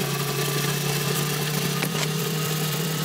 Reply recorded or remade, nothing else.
remade